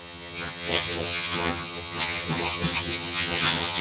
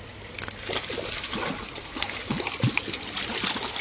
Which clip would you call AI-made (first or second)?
first